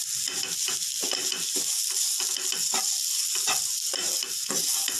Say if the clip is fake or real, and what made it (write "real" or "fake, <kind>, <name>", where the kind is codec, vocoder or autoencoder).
real